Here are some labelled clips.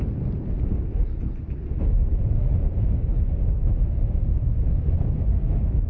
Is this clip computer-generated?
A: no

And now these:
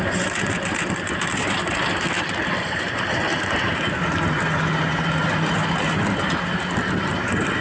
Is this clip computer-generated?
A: no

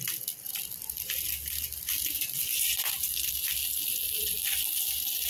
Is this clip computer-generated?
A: no